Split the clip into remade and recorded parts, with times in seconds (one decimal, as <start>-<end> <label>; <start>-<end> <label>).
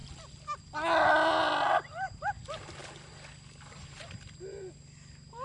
0.0-5.4 recorded